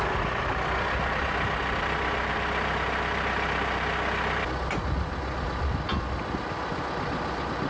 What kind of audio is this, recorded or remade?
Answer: recorded